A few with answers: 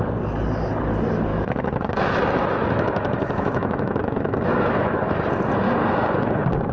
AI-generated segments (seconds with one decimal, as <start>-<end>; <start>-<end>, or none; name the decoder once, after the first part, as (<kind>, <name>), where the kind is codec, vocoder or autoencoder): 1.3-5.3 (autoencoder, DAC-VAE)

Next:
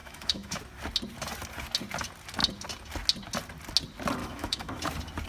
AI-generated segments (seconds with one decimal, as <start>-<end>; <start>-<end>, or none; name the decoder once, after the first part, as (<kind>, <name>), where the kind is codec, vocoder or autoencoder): 0.0-0.6 (autoencoder, DAC-VAE); 4.2-4.8

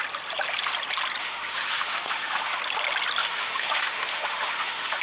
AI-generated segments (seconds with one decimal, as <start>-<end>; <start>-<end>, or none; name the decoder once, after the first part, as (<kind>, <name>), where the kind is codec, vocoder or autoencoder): 1.2-2.6 (autoencoder, DAC-VAE); 3.2-5.0

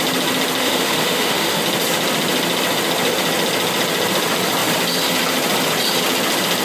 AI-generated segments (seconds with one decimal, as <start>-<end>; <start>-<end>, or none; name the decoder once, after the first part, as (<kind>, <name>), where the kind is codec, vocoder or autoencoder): 0.6-1.6 (autoencoder, DAC-VAE)

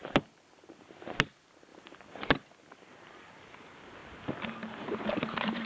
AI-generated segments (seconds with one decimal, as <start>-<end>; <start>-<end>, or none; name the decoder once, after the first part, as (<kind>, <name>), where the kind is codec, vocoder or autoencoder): none

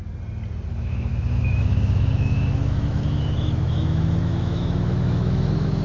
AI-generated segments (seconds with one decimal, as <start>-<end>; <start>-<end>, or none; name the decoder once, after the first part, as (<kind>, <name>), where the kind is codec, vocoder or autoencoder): 0.7-5.8 (autoencoder, DAC-VAE)

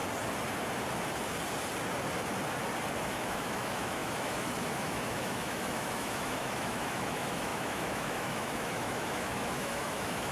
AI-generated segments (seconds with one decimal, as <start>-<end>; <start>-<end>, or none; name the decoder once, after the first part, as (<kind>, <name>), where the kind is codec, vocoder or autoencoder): 2.9-10.3 (autoencoder, DAC-VAE)

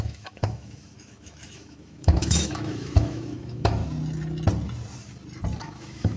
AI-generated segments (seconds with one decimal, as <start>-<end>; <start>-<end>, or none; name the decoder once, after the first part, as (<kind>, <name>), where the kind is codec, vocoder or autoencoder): 0.0-3.8 (autoencoder, DAC-VAE); 5.6-6.2